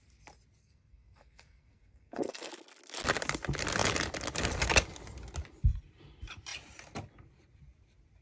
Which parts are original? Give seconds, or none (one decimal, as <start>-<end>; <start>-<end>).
0.0-0.6; 2.5-8.2